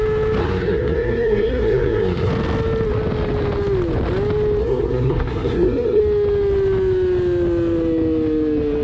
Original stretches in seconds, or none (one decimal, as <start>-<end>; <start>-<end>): 0.0-0.4; 2.3-4.6; 6.0-8.8